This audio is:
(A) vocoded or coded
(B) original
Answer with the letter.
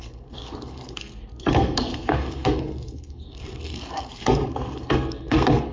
A